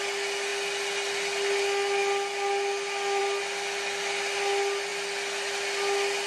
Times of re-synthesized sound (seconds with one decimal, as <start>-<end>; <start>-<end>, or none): none